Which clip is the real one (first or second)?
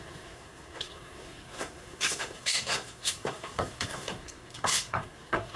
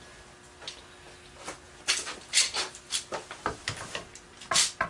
second